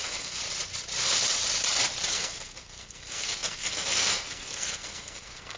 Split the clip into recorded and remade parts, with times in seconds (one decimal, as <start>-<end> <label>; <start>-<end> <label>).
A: 0.0-0.4 remade; 0.4-2.1 recorded; 2.1-5.6 remade